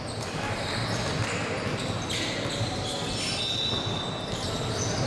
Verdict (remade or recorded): recorded